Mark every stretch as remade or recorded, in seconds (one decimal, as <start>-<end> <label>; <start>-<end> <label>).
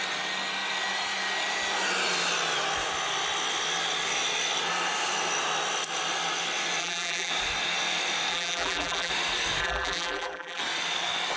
0.0-6.8 recorded; 6.8-7.3 remade; 7.3-8.3 recorded; 8.3-9.1 remade; 9.1-9.6 recorded; 9.6-10.6 remade; 10.6-11.4 recorded